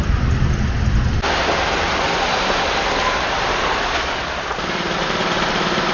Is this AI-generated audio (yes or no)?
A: no